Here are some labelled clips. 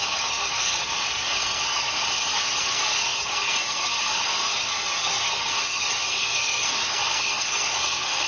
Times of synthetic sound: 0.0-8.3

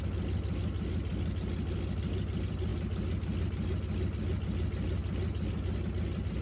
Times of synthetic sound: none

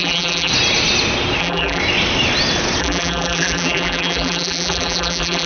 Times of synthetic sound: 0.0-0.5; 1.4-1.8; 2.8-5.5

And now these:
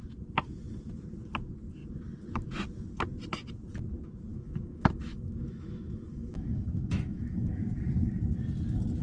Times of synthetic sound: 4.3-7.6

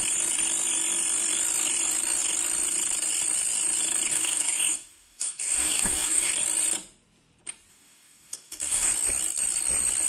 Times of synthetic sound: 4.1-6.3; 7.7-8.9

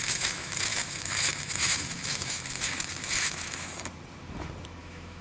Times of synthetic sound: 0.0-3.7; 4.8-5.2

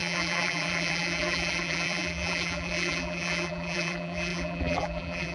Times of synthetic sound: 0.0-5.3